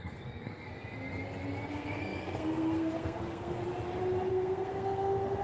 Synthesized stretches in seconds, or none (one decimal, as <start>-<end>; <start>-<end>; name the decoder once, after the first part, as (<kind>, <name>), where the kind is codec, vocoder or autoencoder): 0.0-0.7 (codec, SNAC); 1.7-3.6; 4.3-5.4